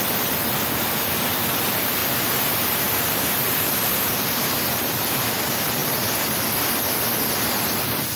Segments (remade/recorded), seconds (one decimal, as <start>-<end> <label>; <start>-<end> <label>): 0.0-2.0 recorded; 2.0-4.8 remade; 4.8-8.2 recorded